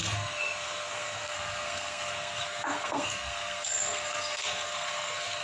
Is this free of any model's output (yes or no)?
no